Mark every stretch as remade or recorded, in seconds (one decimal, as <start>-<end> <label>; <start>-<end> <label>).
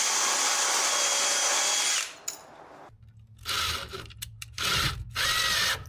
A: 0.0-3.9 recorded; 3.9-4.9 remade; 4.9-5.9 recorded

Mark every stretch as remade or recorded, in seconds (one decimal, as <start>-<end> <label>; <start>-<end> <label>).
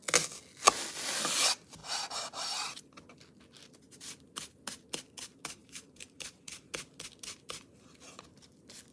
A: 0.0-1.8 recorded; 1.8-2.8 remade; 2.8-5.6 recorded; 5.6-6.7 remade; 6.7-8.9 recorded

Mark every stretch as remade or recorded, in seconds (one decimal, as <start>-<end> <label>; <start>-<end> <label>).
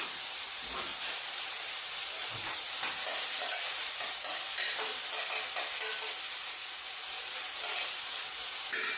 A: 0.0-4.9 remade; 4.9-6.9 recorded; 6.9-9.0 remade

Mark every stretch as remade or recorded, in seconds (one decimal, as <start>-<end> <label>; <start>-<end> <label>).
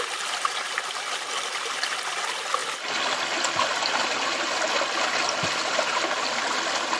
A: 0.0-7.0 recorded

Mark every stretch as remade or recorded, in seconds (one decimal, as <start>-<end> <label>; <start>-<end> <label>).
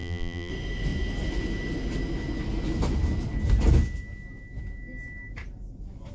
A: 0.0-0.5 remade; 0.5-6.1 recorded